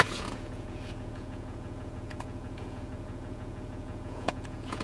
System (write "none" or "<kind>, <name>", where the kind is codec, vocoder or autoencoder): vocoder, Vocos